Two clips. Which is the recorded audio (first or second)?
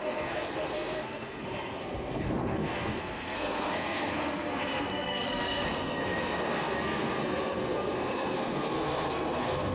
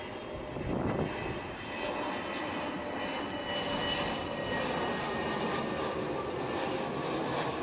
second